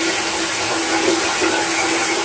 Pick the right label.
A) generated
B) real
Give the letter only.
B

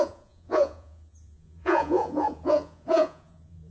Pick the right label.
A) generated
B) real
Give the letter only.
A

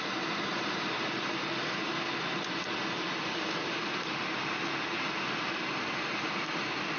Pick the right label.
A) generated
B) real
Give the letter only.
B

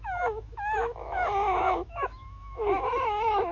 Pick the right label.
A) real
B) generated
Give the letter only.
B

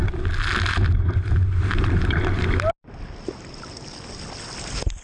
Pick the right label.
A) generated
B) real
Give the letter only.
B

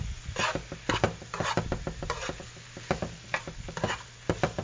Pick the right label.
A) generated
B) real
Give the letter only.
B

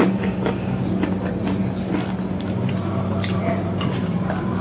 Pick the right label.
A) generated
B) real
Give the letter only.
B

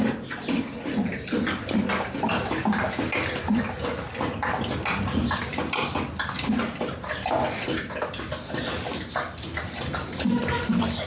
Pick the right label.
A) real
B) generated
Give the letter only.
A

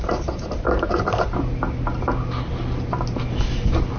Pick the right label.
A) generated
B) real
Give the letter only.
B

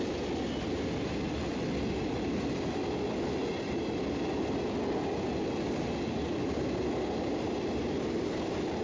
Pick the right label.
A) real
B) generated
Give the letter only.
A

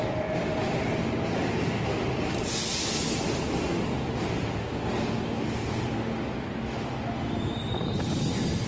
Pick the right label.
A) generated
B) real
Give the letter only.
B